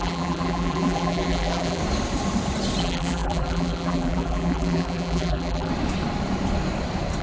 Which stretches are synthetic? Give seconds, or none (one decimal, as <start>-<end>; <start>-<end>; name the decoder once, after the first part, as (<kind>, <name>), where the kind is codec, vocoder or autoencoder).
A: 0.0-1.8 (vocoder, BigVGAN v2); 2.8-5.7